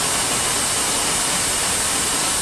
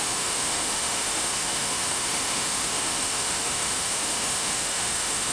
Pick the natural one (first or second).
first